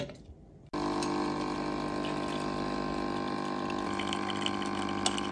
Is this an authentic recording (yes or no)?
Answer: yes